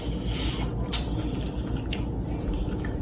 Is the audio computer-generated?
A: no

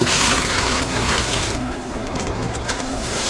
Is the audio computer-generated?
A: yes